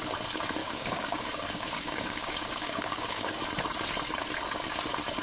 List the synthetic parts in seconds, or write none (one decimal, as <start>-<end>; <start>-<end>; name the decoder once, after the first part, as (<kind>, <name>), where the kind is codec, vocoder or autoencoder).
0.6-3.4 (codec, DAC)